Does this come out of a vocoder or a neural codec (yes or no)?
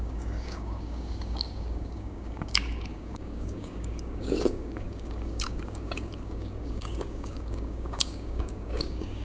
yes